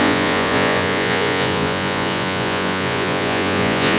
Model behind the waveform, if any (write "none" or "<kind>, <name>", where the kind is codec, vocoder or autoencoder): vocoder, Vocos